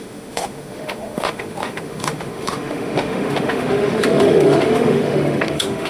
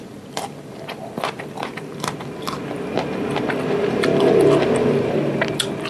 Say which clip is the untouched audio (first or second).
second